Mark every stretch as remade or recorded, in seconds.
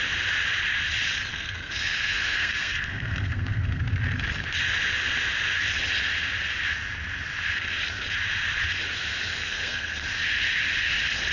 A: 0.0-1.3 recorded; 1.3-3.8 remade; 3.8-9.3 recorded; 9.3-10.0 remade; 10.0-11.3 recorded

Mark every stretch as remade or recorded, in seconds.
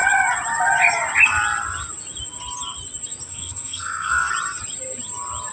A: 0.0-3.3 recorded; 3.3-4.3 remade; 4.3-5.5 recorded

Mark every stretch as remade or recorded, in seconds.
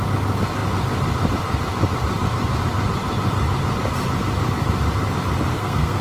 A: 0.0-5.5 recorded; 5.5-6.0 remade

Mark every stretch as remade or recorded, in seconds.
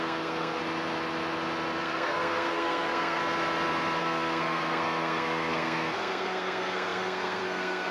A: 0.0-0.6 remade; 0.6-1.8 recorded; 1.8-3.2 remade; 3.2-4.0 recorded; 4.0-7.9 remade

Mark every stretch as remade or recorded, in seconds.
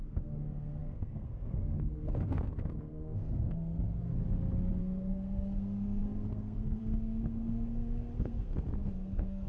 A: 0.0-4.1 remade; 4.1-4.8 recorded; 4.8-9.5 remade